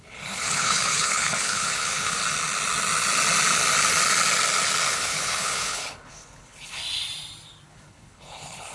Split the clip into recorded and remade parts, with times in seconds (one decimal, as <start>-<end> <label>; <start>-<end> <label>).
0.0-2.2 remade; 2.2-4.9 recorded; 4.9-6.8 remade; 6.8-7.7 recorded; 7.7-8.7 remade